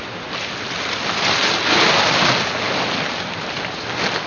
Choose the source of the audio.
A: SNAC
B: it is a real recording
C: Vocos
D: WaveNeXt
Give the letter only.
B